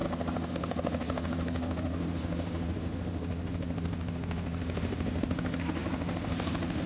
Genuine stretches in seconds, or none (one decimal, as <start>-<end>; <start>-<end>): 0.0-6.9